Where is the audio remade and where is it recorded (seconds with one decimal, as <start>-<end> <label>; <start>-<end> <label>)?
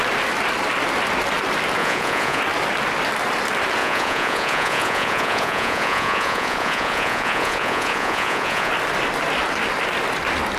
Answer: 0.0-1.8 recorded; 1.8-2.4 remade; 2.4-3.8 recorded; 3.8-8.7 remade; 8.7-10.6 recorded